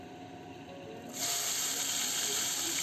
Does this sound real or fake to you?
fake